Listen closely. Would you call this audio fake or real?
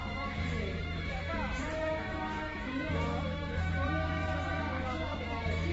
fake